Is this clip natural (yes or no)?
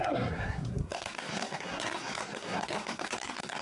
no